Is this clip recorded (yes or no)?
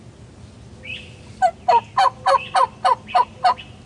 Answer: yes